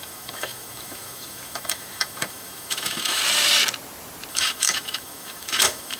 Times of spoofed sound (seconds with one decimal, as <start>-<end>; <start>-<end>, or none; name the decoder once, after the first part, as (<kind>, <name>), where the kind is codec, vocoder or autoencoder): 0.0-3.2 (autoencoder, DAC-VAE); 4.3-6.0

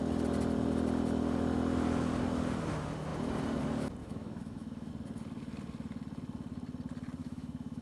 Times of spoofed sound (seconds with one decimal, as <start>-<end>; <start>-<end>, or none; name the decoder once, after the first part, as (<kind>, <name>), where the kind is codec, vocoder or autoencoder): 4.0-4.9 (autoencoder, DAC-VAE); 7.2-7.8

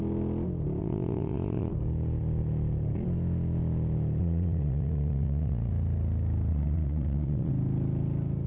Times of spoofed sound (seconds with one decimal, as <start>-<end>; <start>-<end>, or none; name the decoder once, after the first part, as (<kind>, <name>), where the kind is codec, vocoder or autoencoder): 0.8-1.7 (vocoder, Vocos); 4.2-5.7; 6.5-7.5

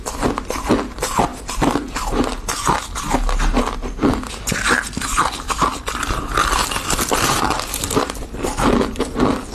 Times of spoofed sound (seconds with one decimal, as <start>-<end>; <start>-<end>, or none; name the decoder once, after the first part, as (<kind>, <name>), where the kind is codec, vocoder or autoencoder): none

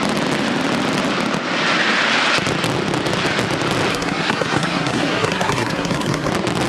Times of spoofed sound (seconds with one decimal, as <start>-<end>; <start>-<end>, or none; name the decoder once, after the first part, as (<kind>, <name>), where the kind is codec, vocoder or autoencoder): 3.9-6.3 (codec, SNAC)

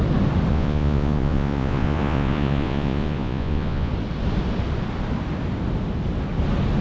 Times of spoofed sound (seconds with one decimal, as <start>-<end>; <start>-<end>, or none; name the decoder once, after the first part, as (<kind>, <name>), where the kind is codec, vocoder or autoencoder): 0.5-3.9 (vocoder, Vocos)

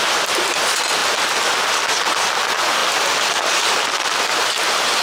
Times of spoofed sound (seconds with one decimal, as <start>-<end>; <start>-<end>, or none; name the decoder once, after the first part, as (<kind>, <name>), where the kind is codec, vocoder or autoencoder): 1.0-1.8 (vocoder, BigVGAN v2); 2.8-4.5